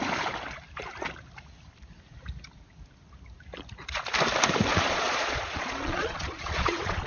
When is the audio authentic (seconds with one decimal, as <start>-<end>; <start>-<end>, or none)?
0.0-4.7